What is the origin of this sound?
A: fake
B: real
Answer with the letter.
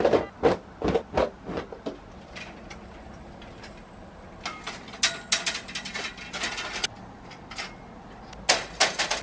B